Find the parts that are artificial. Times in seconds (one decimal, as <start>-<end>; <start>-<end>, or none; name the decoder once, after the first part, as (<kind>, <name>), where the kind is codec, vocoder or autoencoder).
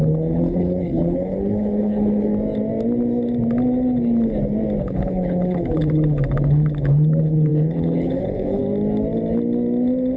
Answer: 0.0-2.3 (codec, HILCodec); 4.8-8.6